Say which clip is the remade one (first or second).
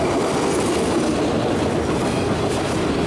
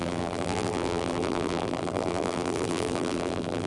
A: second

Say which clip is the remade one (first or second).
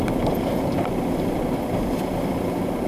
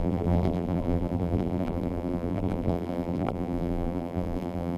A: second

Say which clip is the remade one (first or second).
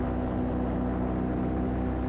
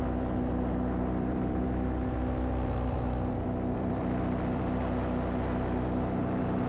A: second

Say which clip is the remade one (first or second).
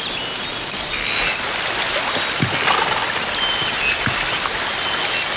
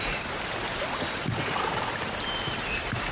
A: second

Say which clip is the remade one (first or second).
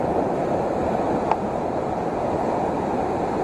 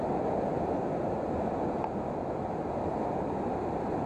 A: first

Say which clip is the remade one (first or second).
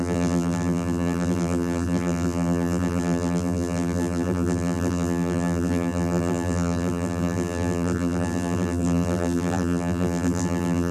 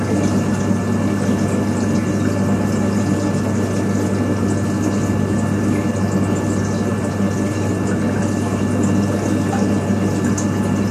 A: first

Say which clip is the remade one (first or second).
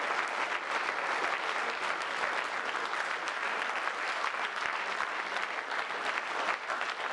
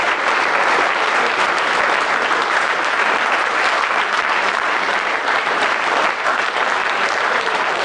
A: second